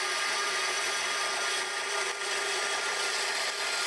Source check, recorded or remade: recorded